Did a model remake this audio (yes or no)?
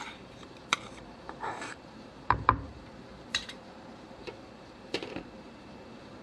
yes